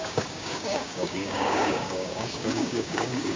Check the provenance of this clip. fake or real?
fake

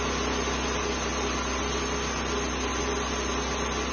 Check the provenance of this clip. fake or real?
real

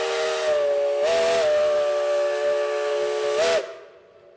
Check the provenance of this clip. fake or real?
real